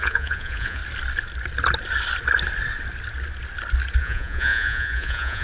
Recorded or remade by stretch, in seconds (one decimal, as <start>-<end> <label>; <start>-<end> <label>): 0.0-0.8 remade; 0.8-4.0 recorded; 4.0-5.4 remade